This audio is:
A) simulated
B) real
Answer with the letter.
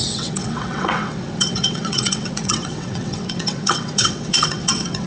A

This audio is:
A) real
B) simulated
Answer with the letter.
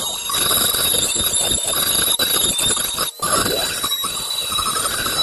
A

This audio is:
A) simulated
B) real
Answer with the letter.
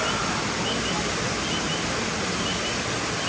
B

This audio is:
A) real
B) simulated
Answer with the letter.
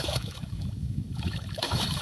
B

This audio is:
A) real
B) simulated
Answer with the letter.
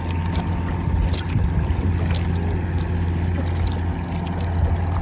A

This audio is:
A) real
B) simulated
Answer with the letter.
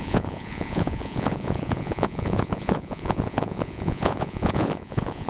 B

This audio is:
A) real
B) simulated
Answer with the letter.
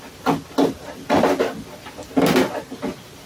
A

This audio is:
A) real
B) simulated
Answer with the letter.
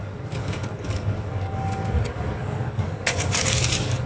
B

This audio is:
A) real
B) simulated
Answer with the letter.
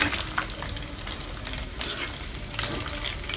A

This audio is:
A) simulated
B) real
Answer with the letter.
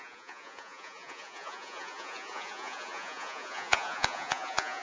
A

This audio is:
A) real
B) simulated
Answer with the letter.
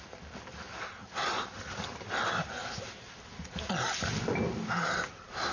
A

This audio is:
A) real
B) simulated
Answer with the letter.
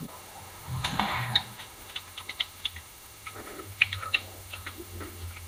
B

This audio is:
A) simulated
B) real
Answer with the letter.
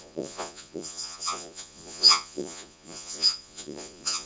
A